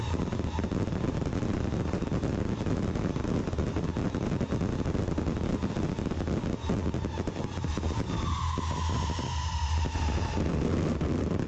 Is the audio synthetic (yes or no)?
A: no